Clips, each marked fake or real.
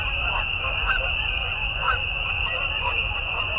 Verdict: fake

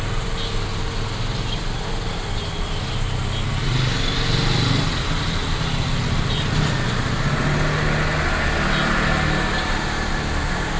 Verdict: real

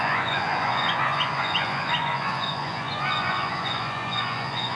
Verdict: fake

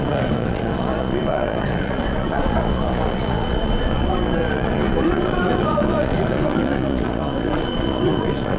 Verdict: fake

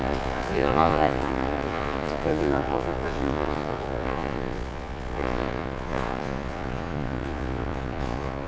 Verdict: fake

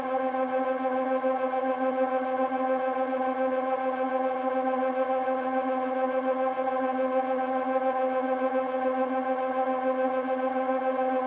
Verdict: fake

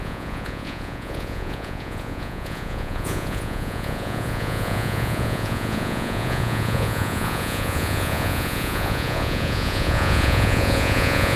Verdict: fake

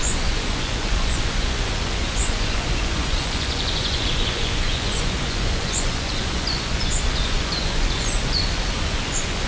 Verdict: fake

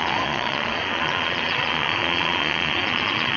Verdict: fake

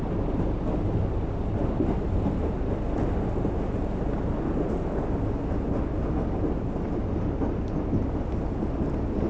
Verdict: real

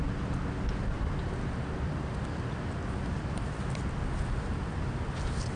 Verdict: real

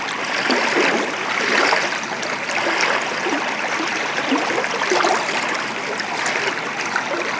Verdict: real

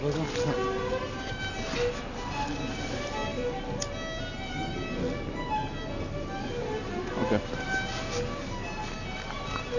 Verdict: real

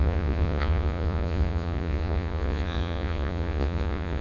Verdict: fake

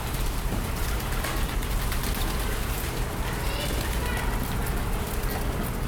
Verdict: real